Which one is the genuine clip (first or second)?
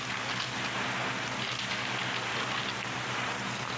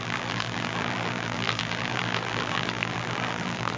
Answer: first